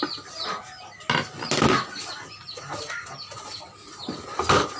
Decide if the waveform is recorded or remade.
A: recorded